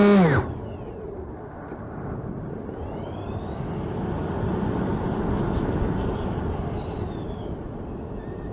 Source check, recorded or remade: recorded